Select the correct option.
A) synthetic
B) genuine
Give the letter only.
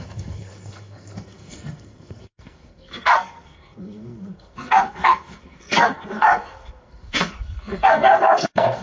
A